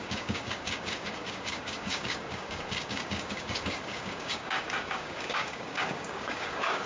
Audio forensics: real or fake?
fake